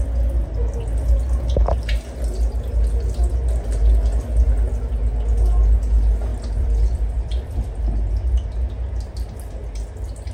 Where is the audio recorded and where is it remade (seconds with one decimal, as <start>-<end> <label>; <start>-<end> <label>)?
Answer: 0.0-6.3 recorded; 6.3-7.8 remade; 7.8-10.3 recorded